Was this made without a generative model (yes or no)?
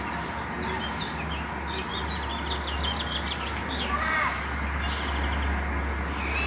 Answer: yes